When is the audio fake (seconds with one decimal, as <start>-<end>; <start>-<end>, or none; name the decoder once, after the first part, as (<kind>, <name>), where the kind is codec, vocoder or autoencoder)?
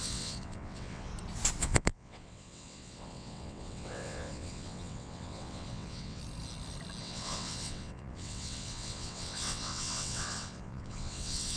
0.0-1.1 (vocoder, WaveNeXt); 1.6-6.2; 7.0-11.6